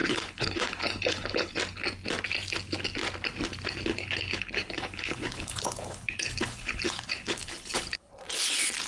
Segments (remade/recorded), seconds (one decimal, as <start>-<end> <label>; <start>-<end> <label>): 0.0-1.5 remade; 1.5-3.9 recorded; 3.9-8.1 remade; 8.1-8.9 recorded